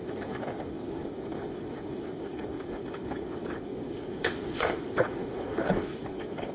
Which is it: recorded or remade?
remade